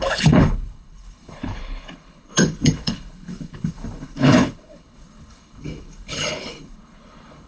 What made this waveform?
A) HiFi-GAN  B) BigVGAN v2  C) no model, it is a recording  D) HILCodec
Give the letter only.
D